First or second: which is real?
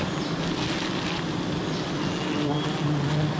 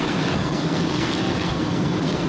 first